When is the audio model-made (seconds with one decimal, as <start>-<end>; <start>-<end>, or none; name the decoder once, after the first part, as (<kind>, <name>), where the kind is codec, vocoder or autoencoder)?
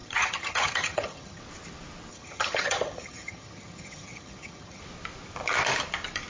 0.0-1.4 (vocoder, HiFi-GAN); 2.1-4.8